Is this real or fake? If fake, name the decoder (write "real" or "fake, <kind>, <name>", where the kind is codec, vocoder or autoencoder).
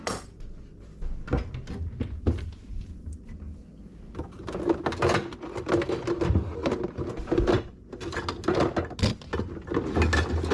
real